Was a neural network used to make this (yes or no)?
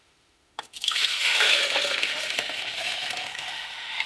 yes